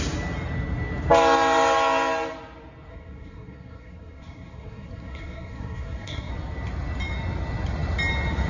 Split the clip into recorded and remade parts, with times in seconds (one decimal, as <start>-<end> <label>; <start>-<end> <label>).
0.0-2.9 recorded; 2.9-6.3 remade; 6.3-8.5 recorded